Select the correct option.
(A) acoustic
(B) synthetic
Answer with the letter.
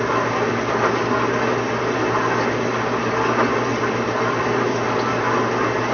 A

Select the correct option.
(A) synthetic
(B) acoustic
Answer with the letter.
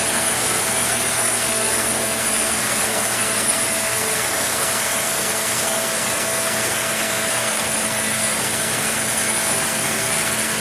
A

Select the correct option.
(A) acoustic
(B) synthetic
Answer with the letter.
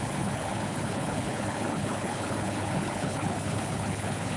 B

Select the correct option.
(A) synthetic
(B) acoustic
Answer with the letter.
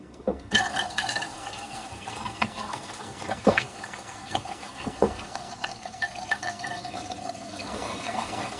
A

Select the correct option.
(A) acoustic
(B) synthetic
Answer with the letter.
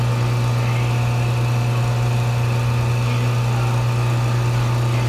A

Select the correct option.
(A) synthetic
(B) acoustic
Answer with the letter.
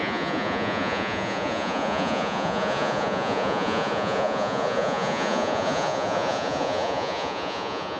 A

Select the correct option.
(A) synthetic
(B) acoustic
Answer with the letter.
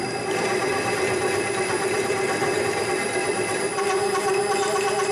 A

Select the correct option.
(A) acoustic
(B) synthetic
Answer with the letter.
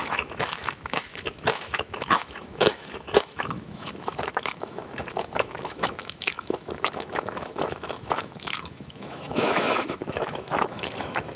B